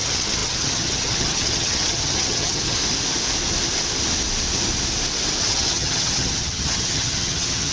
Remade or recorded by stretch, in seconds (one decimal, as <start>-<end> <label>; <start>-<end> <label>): 0.0-2.8 remade; 2.8-5.4 recorded; 5.4-7.7 remade